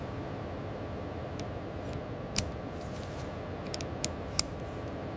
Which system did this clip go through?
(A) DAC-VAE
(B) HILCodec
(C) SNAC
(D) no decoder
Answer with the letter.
D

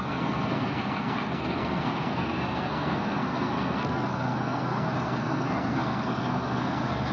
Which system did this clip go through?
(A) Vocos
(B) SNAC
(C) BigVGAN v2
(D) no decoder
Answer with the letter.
B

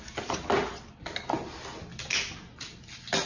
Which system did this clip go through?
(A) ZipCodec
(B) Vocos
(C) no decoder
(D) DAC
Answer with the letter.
C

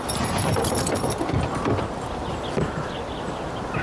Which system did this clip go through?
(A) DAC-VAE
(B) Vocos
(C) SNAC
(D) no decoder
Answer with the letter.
D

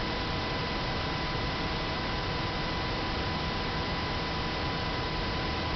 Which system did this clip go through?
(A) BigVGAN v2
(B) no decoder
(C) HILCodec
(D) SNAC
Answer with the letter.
B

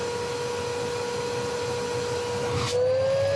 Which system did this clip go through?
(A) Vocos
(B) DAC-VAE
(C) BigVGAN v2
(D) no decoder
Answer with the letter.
D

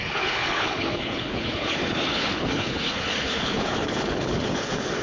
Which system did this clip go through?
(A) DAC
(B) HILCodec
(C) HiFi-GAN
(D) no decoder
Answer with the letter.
B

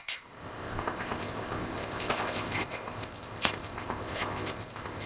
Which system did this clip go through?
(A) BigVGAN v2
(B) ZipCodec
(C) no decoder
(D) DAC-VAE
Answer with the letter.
B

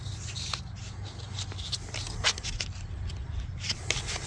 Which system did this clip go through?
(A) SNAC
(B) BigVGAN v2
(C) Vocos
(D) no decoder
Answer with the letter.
D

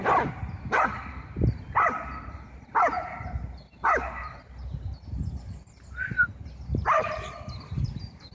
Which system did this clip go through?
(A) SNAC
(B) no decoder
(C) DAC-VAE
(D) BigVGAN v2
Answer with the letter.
D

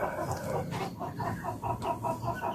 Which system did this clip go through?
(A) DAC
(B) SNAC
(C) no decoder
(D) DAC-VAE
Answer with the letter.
C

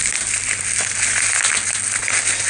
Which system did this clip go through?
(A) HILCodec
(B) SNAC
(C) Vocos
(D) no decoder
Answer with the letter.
D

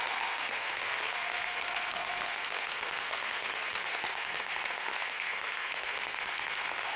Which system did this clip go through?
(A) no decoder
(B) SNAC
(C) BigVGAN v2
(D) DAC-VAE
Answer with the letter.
B